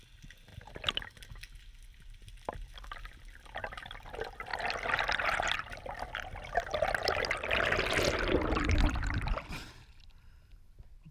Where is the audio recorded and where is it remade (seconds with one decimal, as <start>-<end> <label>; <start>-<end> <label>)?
0.0-11.1 recorded